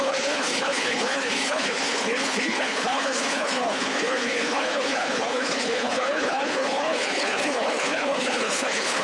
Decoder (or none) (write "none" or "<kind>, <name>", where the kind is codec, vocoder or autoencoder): codec, HILCodec